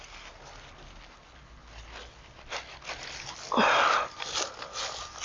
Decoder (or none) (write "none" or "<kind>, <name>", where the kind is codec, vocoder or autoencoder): none